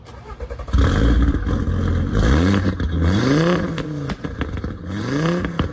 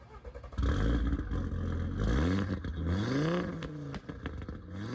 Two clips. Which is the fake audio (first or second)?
first